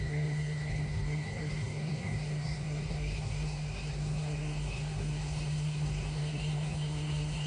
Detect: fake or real fake